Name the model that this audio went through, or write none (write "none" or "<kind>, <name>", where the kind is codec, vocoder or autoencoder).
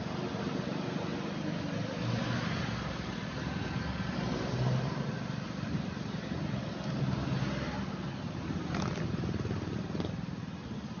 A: none